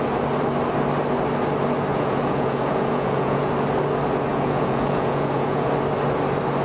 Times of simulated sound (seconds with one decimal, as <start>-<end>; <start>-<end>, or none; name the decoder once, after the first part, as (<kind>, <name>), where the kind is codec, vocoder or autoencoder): 1.9-3.5 (vocoder, Vocos); 4.3-5.7